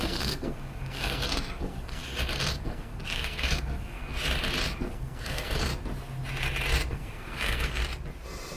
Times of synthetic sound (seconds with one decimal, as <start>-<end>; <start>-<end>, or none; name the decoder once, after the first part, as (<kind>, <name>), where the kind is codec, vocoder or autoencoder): 0.0-2.0 (codec, SNAC); 2.6-4.1; 4.8-5.7; 6.9-7.8